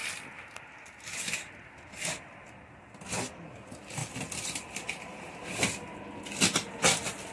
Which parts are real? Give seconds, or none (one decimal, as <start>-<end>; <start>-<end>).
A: 0.0-7.3